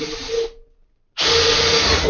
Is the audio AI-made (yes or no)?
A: no